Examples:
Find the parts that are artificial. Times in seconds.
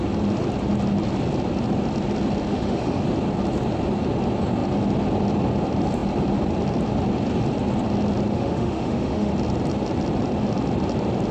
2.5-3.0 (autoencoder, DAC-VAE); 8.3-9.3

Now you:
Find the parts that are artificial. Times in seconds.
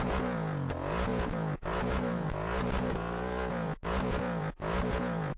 0.0-5.4 (vocoder, Vocos)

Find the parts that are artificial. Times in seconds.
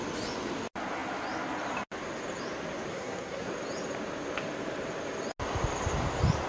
2.9-3.5 (codec, SNAC)